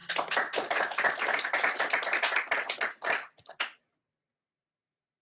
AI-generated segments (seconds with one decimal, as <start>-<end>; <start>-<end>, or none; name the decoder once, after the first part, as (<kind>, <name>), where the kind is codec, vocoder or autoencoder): none